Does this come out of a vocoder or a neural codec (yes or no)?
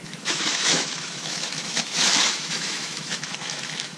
yes